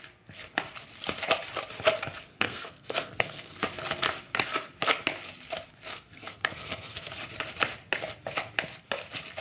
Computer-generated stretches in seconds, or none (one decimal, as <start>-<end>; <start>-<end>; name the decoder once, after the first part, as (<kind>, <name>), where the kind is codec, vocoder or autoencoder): 2.3-3.6 (codec, SNAC); 5.9-7.1